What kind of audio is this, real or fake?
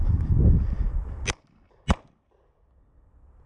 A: real